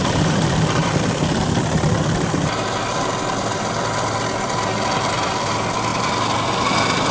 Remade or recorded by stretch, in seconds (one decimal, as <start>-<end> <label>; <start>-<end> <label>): 0.0-7.1 recorded